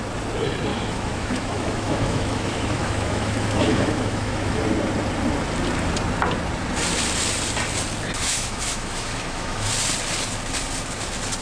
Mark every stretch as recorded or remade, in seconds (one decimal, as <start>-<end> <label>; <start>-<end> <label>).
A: 0.0-0.7 recorded; 0.7-4.6 remade; 4.6-8.2 recorded; 8.2-9.7 remade; 9.7-11.4 recorded